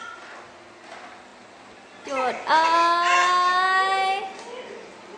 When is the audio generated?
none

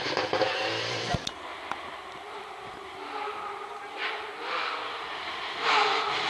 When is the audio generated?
1.5-3.1 (vocoder, BigVGAN v2); 4.0-6.3

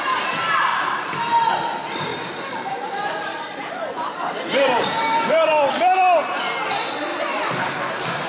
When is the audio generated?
0.7-1.3 (vocoder, BigVGAN v2); 2.1-5.5; 7.1-7.9